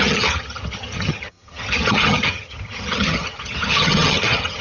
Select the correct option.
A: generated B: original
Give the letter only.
A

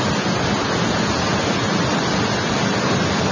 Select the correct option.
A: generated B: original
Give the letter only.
B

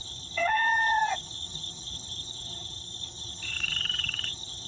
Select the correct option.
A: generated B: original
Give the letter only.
A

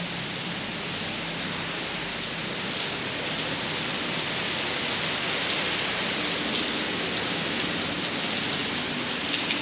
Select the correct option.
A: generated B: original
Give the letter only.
B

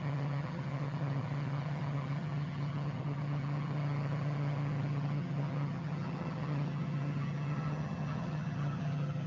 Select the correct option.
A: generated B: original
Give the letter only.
A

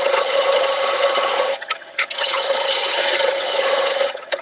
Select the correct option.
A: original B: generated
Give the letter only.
B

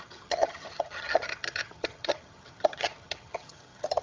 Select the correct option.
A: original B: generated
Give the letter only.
B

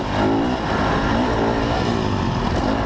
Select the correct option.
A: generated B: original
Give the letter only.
B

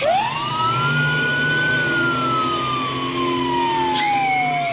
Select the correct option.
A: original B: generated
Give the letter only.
A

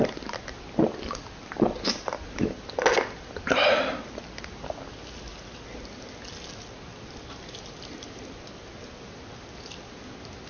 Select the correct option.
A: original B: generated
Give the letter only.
A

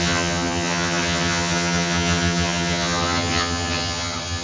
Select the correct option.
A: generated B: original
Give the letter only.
A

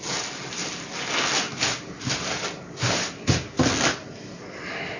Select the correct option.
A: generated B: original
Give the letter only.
B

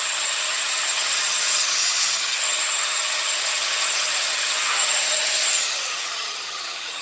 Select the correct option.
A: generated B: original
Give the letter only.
A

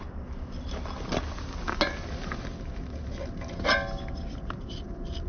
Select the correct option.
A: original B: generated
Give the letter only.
A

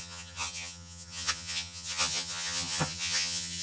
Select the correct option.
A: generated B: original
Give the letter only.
A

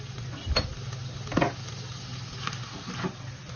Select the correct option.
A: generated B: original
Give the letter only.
B